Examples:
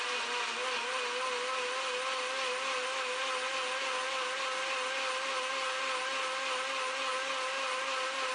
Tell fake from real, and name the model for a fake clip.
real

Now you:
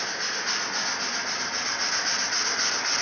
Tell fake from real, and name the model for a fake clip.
real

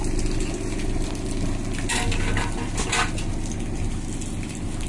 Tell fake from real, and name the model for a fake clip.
real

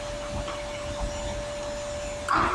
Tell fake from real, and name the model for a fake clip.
real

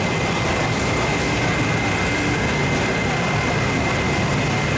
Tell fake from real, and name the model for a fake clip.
real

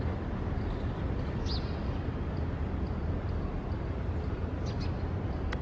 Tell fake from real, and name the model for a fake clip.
real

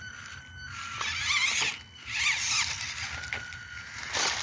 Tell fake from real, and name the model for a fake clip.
real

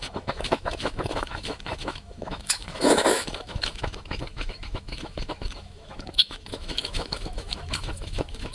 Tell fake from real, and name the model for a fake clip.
fake, autoencoder, DAC-VAE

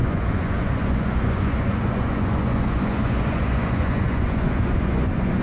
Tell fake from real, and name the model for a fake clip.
fake, vocoder, Vocos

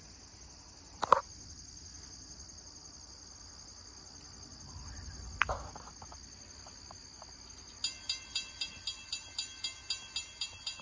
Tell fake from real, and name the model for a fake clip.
real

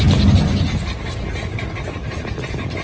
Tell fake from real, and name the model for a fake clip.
real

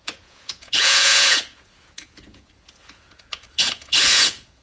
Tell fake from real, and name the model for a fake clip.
fake, vocoder, Vocos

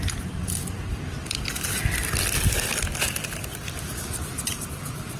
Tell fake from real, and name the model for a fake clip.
real